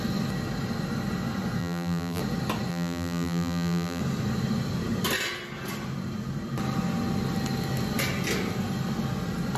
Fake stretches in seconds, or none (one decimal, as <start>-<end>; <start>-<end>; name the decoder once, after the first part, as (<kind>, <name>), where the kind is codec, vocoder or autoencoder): 1.6-2.2 (vocoder, BigVGAN v2); 2.7-4.0